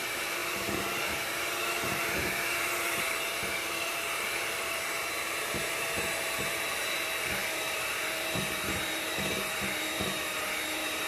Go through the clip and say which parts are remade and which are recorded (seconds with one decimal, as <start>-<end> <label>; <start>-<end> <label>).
0.0-11.1 remade